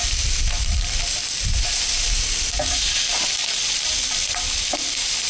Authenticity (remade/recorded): remade